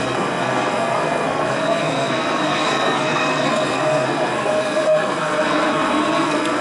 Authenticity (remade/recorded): remade